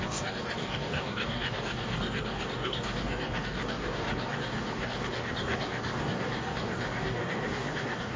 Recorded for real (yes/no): no